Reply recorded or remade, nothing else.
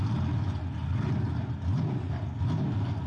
recorded